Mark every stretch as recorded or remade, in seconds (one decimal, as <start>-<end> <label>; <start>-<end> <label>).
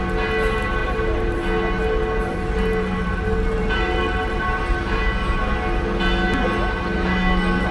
0.0-0.8 recorded; 0.8-1.4 remade; 1.4-2.3 recorded; 2.3-5.4 remade; 5.4-7.7 recorded